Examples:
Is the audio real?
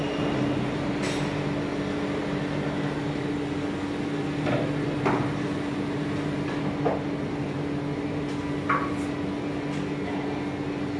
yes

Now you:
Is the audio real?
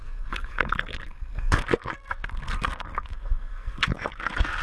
no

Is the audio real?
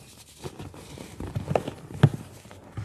yes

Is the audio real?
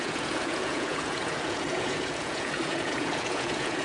no